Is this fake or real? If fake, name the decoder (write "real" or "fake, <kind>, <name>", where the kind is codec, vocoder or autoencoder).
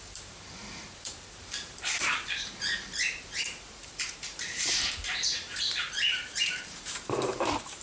fake, vocoder, BigVGAN v2